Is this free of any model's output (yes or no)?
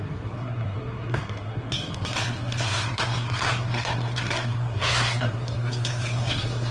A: no